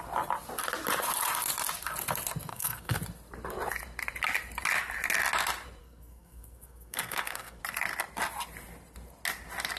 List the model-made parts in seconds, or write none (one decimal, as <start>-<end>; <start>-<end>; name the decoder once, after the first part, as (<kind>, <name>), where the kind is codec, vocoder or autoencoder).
2.5-3.0 (codec, SNAC); 5.8-7.6